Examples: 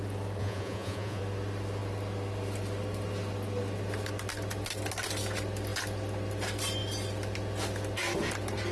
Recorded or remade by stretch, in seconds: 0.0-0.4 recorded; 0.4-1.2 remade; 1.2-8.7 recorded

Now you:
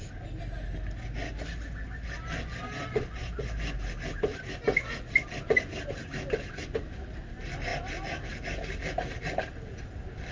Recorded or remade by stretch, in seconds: 0.0-10.3 recorded

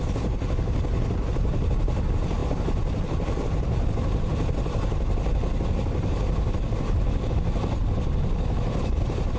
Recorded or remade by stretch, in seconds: 0.0-9.4 recorded

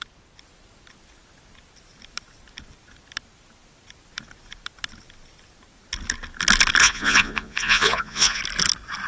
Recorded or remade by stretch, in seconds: 0.0-6.8 recorded; 6.8-8.4 remade; 8.4-9.1 recorded

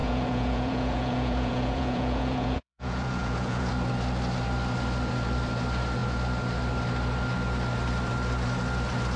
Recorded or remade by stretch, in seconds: 0.0-3.7 remade; 3.7-9.2 recorded

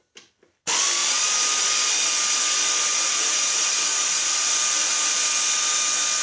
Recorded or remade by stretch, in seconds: 0.0-3.1 recorded; 3.1-4.5 remade; 4.5-6.2 recorded

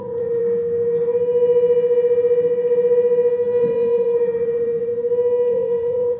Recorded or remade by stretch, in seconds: 0.0-0.4 remade; 0.4-3.6 recorded; 3.6-4.9 remade; 4.9-5.5 recorded; 5.5-6.2 remade

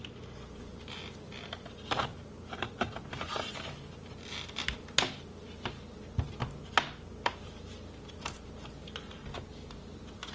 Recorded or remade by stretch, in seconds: 0.0-10.3 recorded